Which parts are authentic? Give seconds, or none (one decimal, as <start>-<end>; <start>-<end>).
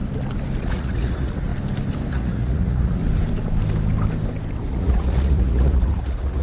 0.0-0.6; 1.5-2.1; 3.0-4.7